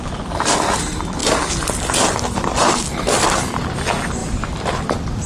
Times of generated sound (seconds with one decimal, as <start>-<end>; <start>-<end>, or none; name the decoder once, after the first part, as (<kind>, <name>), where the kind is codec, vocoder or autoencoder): 4.2-4.8 (vocoder, BigVGAN v2)